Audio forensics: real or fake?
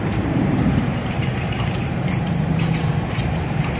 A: fake